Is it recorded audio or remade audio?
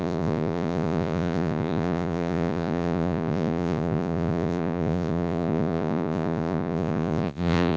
remade